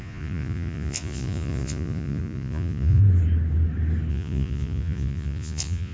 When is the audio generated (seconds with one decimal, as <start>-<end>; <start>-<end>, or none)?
0.0-3.0; 4.1-5.9